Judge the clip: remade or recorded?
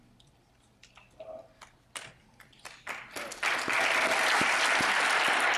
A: recorded